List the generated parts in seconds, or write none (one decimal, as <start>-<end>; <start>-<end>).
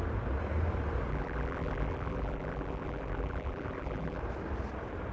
1.1-4.2